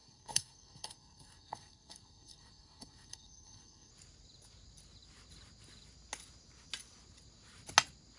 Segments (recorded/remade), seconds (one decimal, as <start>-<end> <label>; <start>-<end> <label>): 0.0-3.9 remade; 3.9-8.2 recorded

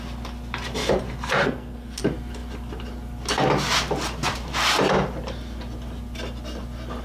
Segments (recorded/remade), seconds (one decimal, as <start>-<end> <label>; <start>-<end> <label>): 0.0-1.4 recorded; 1.4-2.0 remade; 2.0-7.0 recorded